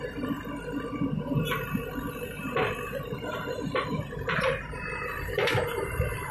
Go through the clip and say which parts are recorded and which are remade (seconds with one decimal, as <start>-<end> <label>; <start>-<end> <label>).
0.0-0.4 remade; 0.4-3.1 recorded; 3.1-6.3 remade